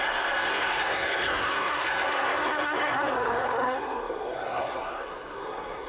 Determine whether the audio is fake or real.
fake